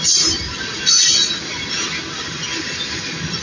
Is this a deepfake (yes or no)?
no